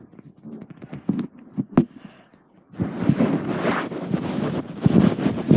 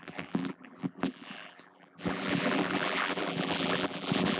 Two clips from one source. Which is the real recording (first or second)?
first